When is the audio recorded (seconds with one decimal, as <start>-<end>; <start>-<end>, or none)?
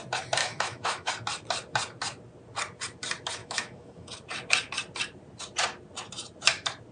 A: 0.0-0.4; 1.1-3.4; 4.1-6.9